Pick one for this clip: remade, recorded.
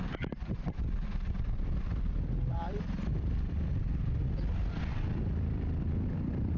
remade